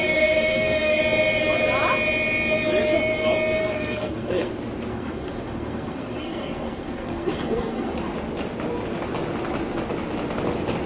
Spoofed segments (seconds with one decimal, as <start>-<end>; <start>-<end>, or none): 0.0-1.0; 3.6-4.5; 4.9-7.9